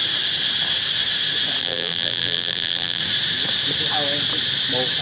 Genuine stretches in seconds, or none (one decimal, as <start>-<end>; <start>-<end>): 0.0-1.6; 3.0-5.0

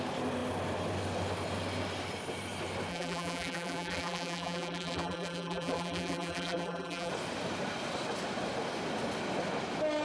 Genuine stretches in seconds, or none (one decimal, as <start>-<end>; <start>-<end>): 0.0-2.9; 7.1-10.0

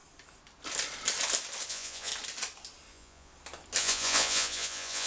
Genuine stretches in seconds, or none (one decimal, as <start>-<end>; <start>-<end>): 0.0-1.7; 2.1-2.9; 3.3-3.8

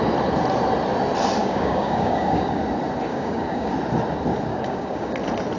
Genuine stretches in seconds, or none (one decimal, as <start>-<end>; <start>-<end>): 0.0-1.4; 2.6-3.1; 3.7-4.5; 5.1-5.6